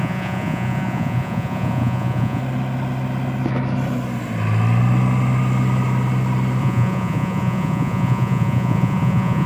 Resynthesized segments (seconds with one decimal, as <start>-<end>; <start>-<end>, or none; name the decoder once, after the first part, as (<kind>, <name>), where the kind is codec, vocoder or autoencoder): 0.0-2.4 (vocoder, Vocos); 6.6-9.5